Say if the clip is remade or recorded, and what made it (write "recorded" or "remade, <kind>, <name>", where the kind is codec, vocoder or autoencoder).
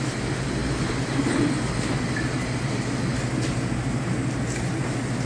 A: recorded